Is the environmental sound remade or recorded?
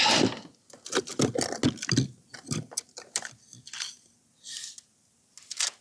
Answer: recorded